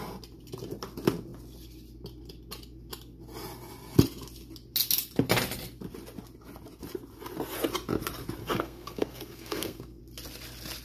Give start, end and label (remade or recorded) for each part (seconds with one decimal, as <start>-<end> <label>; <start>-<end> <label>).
0.0-8.4 recorded; 8.4-10.0 remade; 10.0-10.8 recorded